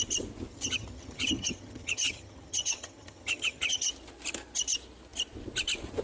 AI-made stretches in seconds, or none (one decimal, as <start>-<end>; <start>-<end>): 0.5-3.9